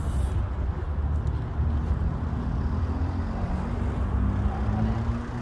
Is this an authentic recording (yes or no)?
yes